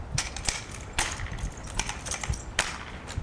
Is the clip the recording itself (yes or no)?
no